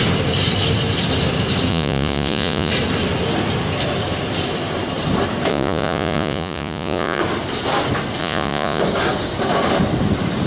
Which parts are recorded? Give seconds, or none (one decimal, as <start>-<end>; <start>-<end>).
0.0-1.7; 2.7-5.5; 7.2-8.2; 8.8-10.5